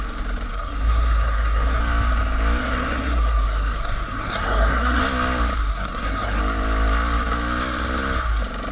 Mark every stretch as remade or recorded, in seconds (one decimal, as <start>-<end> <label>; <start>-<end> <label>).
0.0-0.5 recorded; 0.5-1.8 remade; 1.8-2.6 recorded; 2.6-5.0 remade; 5.0-5.7 recorded; 5.7-6.4 remade; 6.4-8.7 recorded